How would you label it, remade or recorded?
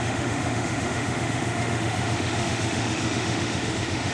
remade